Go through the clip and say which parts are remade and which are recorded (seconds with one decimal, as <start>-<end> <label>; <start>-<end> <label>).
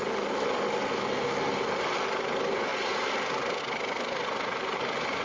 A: 0.0-5.2 recorded